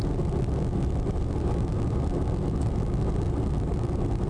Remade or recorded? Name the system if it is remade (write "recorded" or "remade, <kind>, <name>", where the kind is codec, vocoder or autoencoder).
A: recorded